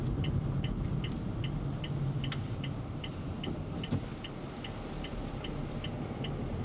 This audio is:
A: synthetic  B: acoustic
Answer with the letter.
B